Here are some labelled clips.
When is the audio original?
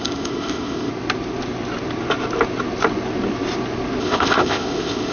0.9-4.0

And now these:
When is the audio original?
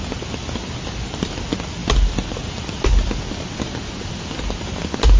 0.0-5.2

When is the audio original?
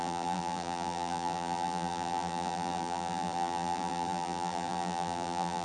none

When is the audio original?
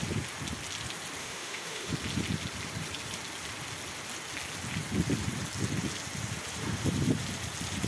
0.0-1.2; 1.9-7.9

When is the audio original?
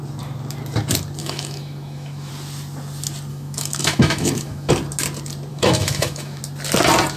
0.0-1.2; 2.3-3.3; 4.7-5.5; 6.4-7.2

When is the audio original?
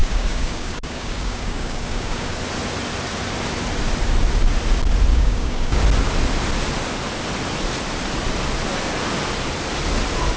2.4-5.1; 5.8-10.4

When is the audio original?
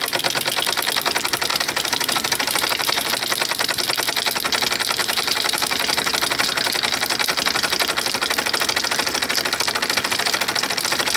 0.0-1.5; 3.1-5.0; 6.1-11.2